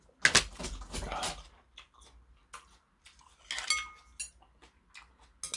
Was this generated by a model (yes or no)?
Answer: no